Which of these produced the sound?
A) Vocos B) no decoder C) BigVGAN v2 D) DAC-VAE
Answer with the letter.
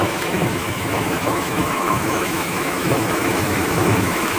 D